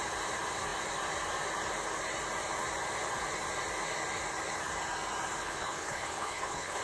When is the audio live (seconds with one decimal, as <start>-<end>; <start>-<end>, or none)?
0.0-5.4

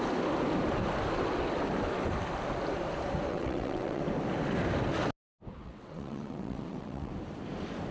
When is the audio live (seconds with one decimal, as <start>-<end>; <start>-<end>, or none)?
0.0-3.3; 4.0-5.6; 7.1-7.9

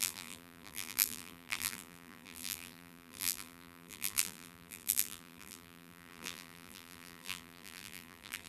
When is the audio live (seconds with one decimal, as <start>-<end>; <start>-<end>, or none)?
none

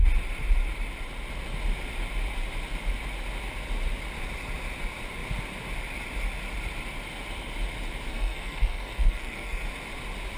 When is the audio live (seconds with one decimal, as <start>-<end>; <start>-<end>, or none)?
0.0-8.1; 9.6-10.4